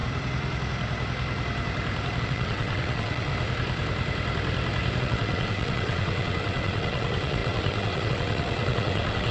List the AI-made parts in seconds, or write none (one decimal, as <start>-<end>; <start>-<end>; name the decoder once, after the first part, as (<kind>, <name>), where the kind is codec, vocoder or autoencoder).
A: 2.2-3.3 (vocoder, WaveNeXt); 5.0-9.3